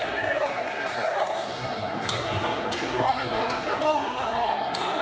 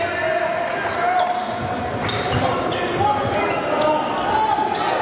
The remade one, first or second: first